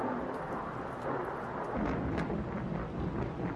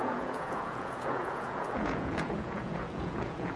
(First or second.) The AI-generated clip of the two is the second